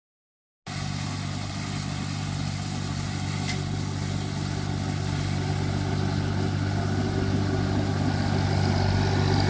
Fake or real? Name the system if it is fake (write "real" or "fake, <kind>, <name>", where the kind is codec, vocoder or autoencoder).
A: real